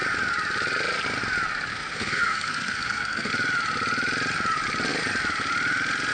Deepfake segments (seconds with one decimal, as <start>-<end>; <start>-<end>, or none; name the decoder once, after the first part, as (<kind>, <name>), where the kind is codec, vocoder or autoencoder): 1.7-3.3 (codec, SNAC)